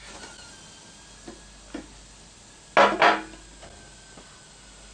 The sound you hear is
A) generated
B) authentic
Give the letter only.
B